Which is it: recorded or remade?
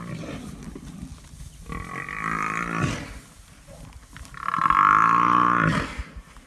recorded